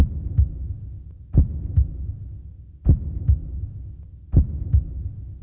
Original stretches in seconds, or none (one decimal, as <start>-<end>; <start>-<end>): 0.0-5.4